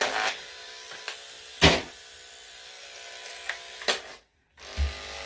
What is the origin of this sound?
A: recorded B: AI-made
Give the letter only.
A